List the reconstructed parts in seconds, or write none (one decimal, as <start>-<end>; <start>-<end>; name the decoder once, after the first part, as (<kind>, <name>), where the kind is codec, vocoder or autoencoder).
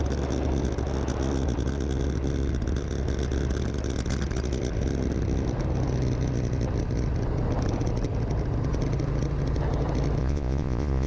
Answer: 10.2-11.1 (vocoder, Vocos)